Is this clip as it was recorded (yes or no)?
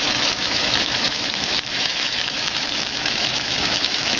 no